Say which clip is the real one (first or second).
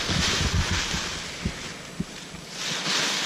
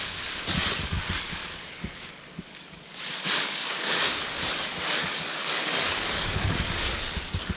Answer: first